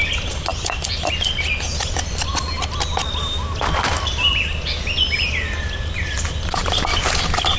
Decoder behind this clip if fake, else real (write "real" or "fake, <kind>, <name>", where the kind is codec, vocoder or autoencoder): real